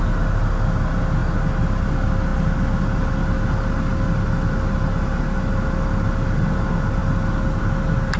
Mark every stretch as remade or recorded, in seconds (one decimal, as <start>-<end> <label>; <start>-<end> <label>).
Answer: 0.0-8.2 recorded